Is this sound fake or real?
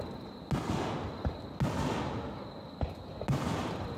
real